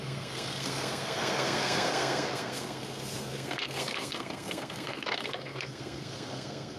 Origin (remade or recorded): remade